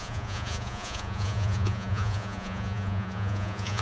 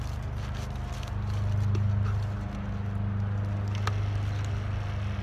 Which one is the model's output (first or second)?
first